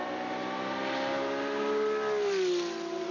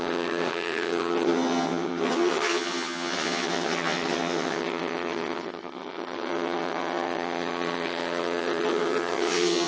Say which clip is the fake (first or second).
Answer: second